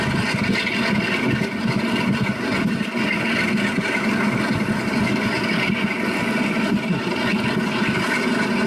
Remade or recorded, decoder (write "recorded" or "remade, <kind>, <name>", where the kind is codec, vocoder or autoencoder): recorded